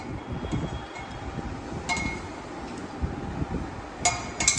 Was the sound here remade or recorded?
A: recorded